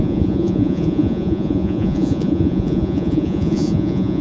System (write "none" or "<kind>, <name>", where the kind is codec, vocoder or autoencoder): vocoder, Vocos